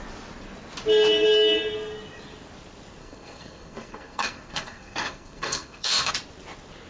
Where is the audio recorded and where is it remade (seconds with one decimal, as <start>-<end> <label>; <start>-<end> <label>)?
0.0-3.0 recorded; 3.0-6.1 remade; 6.1-6.9 recorded